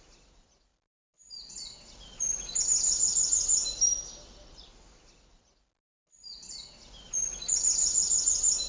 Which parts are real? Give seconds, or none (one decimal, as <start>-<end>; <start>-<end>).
3.6-7.7